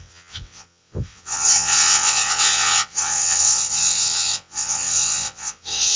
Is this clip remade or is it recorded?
remade